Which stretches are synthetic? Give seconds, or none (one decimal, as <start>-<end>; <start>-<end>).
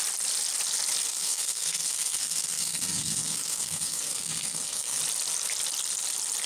1.1-5.0